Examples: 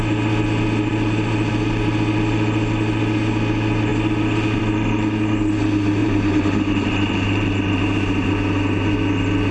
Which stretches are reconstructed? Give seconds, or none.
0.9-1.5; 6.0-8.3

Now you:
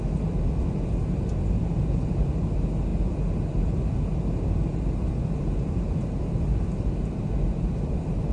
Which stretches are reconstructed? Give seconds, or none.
none

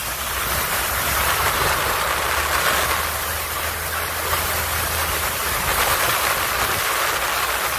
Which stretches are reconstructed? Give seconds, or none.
5.7-6.5

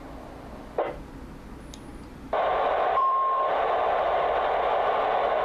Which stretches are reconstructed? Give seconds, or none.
1.9-5.0

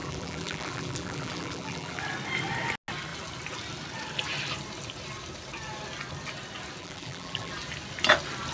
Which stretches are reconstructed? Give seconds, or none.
0.0-2.0; 6.8-7.5

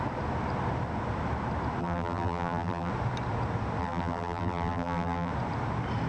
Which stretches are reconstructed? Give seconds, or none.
1.8-2.9; 3.8-5.3

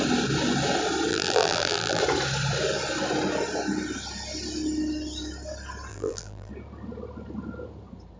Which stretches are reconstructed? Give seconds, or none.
1.1-2.0; 5.9-6.5

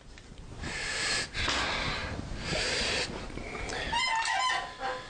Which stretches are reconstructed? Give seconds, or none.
2.0-3.7